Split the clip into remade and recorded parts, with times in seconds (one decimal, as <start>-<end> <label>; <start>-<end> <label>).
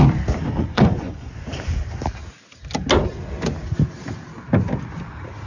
0.0-0.6 recorded; 0.6-1.3 remade; 1.3-5.5 recorded